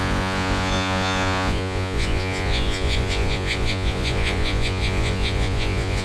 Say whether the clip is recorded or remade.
remade